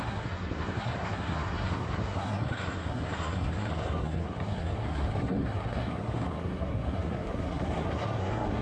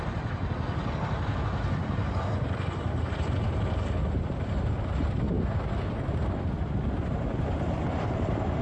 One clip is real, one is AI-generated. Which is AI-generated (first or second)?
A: first